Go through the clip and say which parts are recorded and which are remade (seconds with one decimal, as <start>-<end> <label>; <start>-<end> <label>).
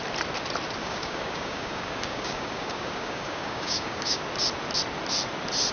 0.0-0.8 recorded; 0.8-4.2 remade; 4.2-5.7 recorded